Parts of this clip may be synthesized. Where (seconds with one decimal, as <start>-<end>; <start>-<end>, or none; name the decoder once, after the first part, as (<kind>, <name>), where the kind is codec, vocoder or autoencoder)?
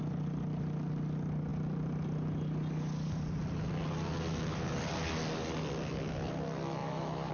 6.8-7.3 (autoencoder, DAC-VAE)